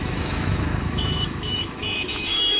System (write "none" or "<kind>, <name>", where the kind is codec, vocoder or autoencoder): autoencoder, DAC-VAE